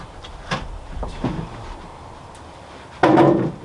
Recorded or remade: recorded